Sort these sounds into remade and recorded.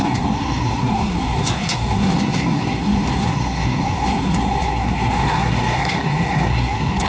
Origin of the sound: remade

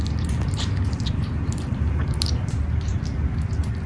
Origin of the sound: recorded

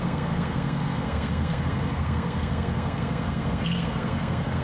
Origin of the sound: remade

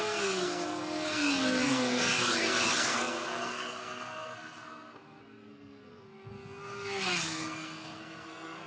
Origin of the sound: remade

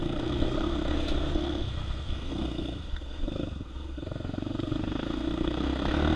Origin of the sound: remade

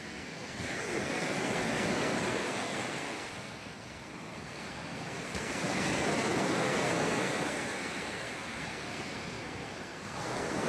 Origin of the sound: remade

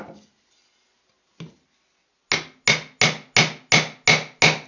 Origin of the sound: recorded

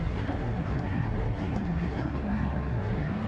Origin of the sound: remade